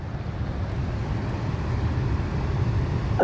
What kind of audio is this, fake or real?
real